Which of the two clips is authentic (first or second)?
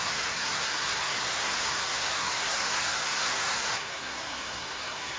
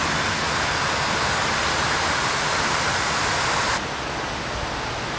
second